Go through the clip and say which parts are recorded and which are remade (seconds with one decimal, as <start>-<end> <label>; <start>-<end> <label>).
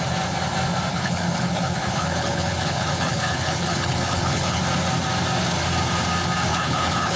0.0-0.9 recorded; 0.9-4.6 remade; 4.6-6.5 recorded; 6.5-7.2 remade